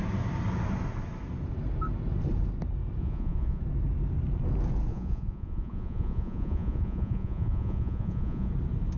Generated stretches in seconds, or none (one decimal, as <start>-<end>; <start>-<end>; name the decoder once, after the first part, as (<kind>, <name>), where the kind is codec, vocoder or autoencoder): 3.0-3.6 (vocoder, Vocos); 4.9-8.5